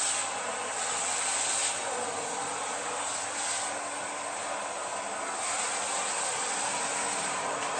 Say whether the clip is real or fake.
real